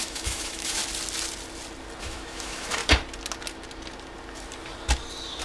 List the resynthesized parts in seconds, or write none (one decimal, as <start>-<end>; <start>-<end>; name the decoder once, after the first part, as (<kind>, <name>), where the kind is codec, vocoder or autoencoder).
0.0-0.8 (autoencoder, DAC-VAE); 2.0-2.8